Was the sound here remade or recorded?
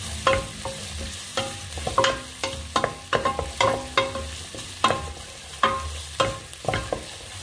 recorded